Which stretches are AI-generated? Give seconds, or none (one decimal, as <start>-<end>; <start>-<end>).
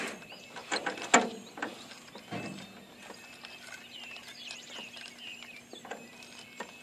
none